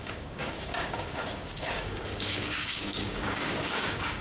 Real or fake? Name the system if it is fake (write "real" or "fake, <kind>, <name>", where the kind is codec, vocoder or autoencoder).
fake, codec, DAC